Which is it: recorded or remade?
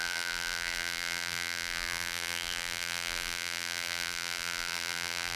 remade